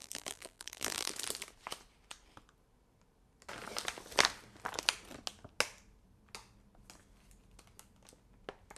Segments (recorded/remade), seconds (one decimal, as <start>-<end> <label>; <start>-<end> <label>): 0.0-1.1 remade; 1.1-8.8 recorded